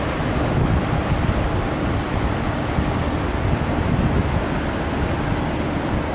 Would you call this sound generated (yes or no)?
no